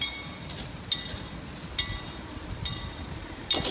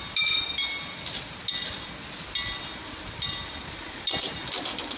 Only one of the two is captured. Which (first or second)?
second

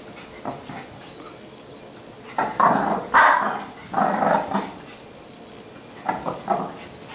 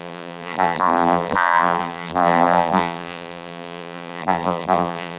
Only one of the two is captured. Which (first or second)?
first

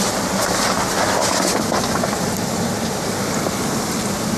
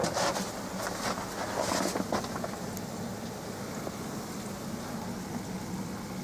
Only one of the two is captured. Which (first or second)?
second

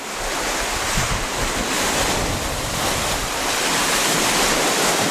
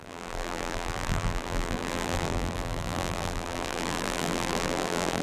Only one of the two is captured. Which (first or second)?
first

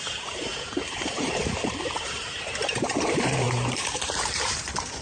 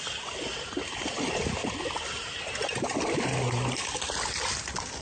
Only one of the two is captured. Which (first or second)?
second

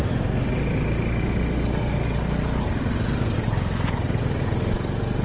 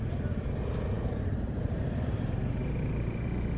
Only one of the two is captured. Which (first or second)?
first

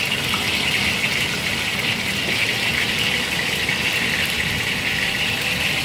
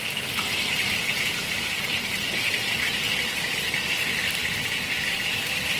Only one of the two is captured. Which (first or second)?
first